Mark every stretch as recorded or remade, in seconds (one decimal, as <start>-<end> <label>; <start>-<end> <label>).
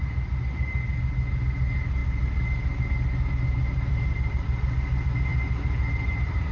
0.0-6.5 recorded